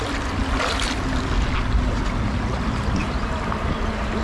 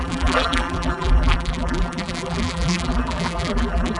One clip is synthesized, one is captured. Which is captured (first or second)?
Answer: first